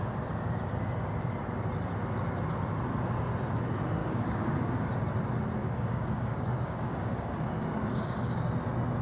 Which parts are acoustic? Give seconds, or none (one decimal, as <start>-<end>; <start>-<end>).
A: 0.0-4.0; 4.9-5.6; 8.5-9.0